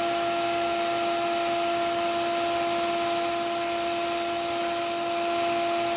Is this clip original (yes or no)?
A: yes